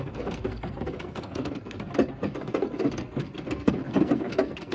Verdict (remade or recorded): remade